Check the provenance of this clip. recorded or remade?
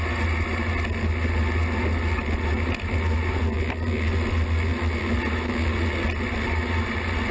recorded